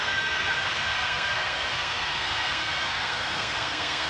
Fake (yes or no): yes